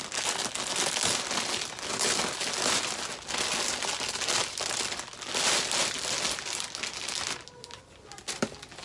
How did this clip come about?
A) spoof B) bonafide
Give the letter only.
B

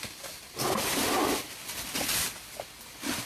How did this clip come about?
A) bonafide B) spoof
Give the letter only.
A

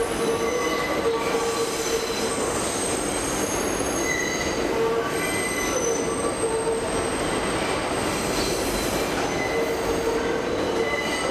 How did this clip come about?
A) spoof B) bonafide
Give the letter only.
B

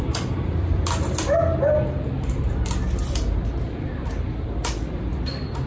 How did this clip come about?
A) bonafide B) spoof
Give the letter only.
B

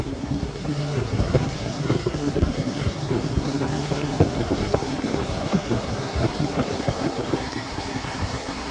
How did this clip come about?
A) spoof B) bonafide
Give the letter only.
A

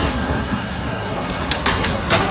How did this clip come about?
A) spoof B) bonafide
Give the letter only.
A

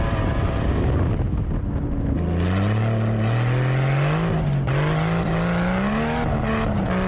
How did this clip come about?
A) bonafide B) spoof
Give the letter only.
A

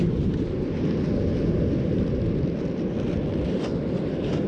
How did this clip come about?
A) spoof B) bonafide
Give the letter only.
B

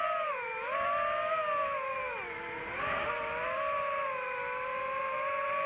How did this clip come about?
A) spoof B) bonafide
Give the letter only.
B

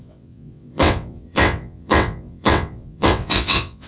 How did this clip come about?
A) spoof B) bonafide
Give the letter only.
A